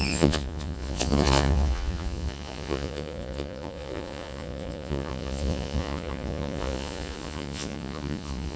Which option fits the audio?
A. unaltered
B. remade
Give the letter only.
B